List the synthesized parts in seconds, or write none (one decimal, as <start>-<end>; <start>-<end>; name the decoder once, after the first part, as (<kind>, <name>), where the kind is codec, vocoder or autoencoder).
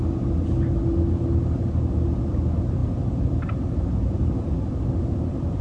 none